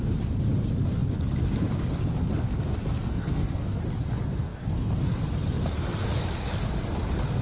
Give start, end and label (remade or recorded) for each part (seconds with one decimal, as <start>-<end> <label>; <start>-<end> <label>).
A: 0.0-3.0 recorded; 3.0-3.8 remade; 3.8-4.4 recorded; 4.4-5.1 remade; 5.1-7.4 recorded